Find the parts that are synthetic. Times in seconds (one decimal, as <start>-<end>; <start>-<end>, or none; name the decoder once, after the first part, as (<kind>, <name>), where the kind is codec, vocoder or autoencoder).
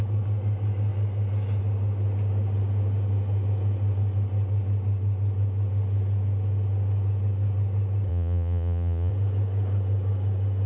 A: 8.1-9.1 (vocoder, Vocos)